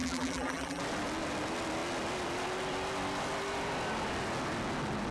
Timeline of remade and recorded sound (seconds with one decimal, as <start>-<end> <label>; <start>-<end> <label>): 0.0-0.8 remade; 0.8-5.1 recorded